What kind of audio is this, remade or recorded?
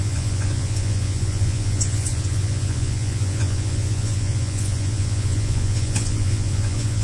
remade